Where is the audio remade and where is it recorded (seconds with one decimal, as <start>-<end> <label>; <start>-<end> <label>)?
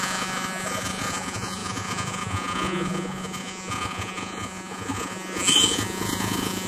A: 0.0-6.7 remade